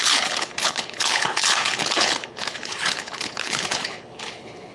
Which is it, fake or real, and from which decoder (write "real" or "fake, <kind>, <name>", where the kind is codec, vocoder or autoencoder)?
fake, codec, HILCodec